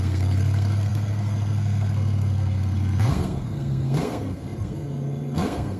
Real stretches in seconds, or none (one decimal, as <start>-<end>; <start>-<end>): none